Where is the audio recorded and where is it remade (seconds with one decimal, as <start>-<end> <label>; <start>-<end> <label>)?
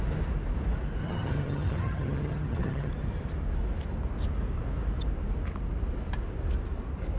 0.0-1.0 recorded; 1.0-2.9 remade; 2.9-7.2 recorded